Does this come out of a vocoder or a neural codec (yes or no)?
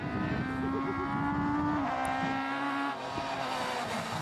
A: no